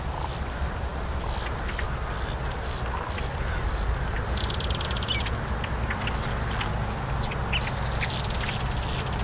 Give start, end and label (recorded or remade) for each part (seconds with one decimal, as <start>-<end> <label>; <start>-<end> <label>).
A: 0.0-9.2 recorded